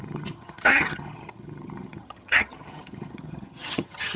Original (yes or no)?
no